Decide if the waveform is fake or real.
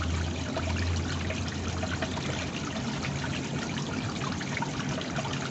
real